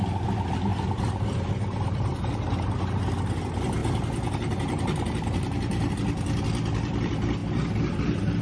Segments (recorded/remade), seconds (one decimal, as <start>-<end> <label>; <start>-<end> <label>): 0.0-0.7 recorded; 0.7-2.3 remade; 2.3-3.8 recorded; 3.8-5.9 remade; 5.9-8.4 recorded